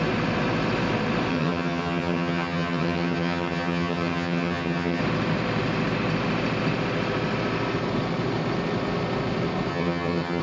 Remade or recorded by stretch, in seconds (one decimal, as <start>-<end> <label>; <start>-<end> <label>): 0.0-1.3 recorded; 1.3-5.0 remade; 5.0-9.7 recorded; 9.7-10.4 remade